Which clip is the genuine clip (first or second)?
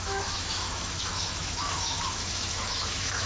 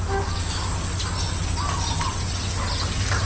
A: second